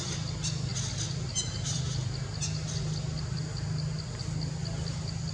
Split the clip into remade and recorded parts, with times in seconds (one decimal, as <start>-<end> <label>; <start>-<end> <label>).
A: 0.0-5.3 recorded